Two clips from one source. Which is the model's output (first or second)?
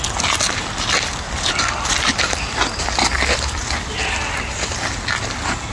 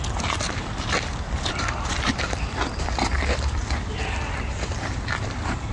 second